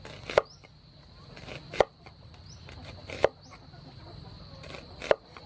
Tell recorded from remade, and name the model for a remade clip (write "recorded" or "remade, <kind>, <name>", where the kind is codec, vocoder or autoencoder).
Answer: recorded